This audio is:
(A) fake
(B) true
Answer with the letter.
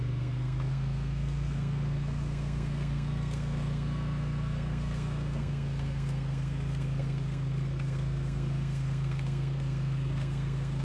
A